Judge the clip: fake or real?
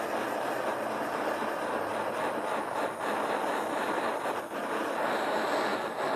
real